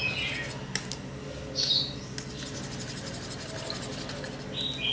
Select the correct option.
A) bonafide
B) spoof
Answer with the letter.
A